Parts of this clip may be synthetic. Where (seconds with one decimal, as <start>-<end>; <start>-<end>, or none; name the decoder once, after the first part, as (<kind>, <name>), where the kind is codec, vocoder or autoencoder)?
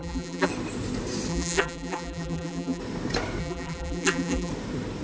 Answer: 0.0-0.5 (vocoder, BigVGAN v2); 1.3-2.8; 3.4-4.5